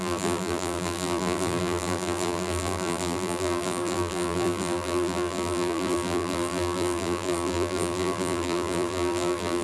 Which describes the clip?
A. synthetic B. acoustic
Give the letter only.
A